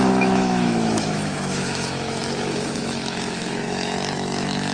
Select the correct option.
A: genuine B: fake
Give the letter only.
B